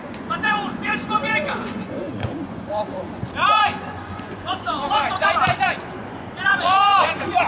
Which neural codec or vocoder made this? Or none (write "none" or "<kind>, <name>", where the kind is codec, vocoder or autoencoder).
vocoder, Vocos